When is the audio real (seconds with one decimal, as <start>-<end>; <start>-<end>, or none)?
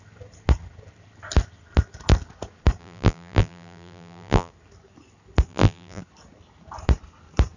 0.0-2.8; 4.5-5.5; 6.0-7.6